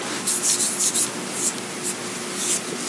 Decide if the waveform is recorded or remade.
recorded